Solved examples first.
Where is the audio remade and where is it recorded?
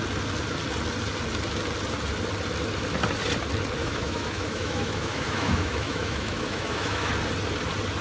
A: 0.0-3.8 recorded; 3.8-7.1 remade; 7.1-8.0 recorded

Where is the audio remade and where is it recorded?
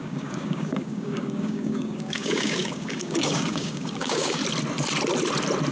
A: 0.0-4.4 remade; 4.4-5.7 recorded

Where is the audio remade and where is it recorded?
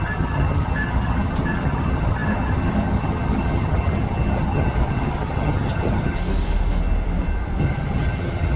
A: 0.0-6.2 remade; 6.2-7.6 recorded; 7.6-8.6 remade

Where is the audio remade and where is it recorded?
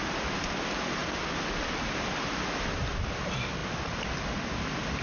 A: 0.0-5.0 recorded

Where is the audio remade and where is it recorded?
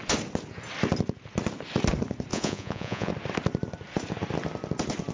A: 0.0-2.3 recorded; 2.3-3.1 remade; 3.1-5.1 recorded